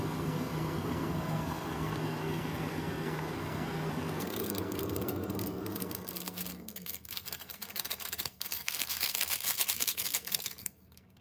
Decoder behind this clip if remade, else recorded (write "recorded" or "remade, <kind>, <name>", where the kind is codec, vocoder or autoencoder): remade, codec, SNAC